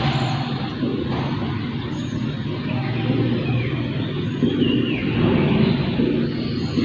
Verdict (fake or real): real